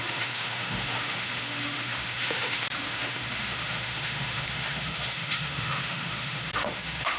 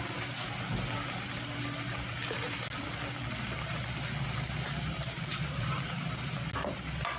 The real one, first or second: second